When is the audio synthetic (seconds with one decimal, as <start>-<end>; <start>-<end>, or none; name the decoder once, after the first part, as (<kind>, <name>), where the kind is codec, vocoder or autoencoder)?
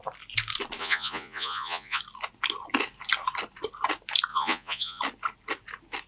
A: 0.8-2.0 (vocoder, Vocos); 4.3-5.0